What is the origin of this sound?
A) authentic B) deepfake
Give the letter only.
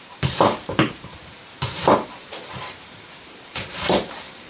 B